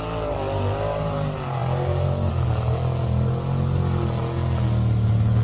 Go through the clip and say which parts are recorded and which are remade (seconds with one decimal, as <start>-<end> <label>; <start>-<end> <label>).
0.0-5.4 recorded